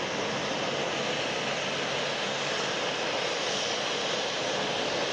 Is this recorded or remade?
recorded